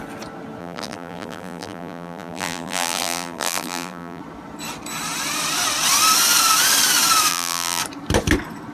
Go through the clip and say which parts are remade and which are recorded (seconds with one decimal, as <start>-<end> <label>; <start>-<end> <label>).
0.0-0.6 recorded; 0.6-4.2 remade; 4.2-7.3 recorded; 7.3-7.8 remade; 7.8-8.7 recorded